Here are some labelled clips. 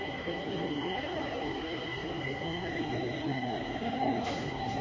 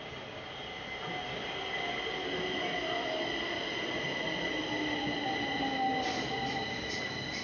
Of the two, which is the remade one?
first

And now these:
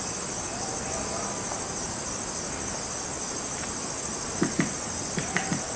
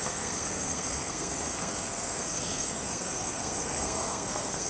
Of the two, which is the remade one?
second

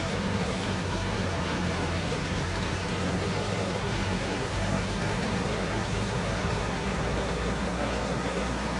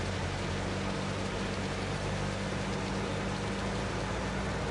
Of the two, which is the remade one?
first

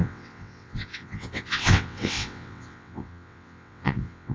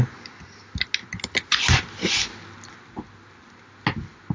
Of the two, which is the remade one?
first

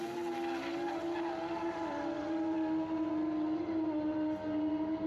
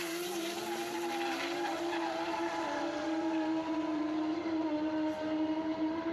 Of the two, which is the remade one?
second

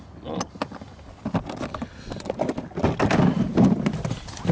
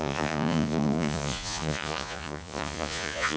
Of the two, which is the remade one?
second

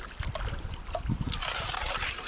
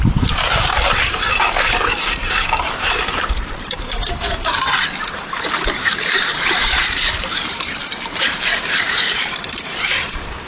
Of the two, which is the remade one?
second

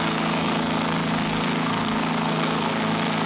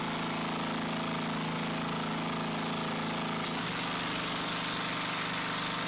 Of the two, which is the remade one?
first